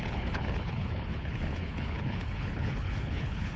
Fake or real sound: fake